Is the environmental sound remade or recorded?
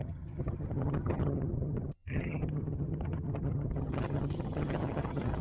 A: remade